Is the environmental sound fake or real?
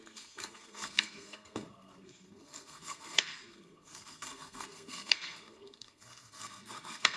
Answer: fake